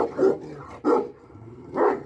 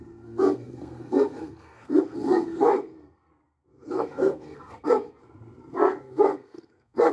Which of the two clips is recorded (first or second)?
first